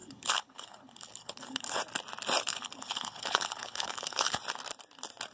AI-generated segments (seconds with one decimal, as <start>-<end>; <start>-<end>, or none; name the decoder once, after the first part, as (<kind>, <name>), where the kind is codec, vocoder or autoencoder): 0.0-1.8 (codec, HILCodec); 2.5-4.4